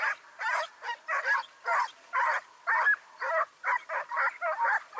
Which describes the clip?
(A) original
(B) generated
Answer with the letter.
A